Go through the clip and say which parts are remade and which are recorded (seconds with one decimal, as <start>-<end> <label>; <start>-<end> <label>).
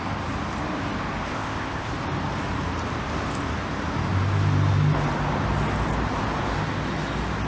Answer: 0.0-1.3 recorded; 1.3-1.9 remade; 1.9-7.5 recorded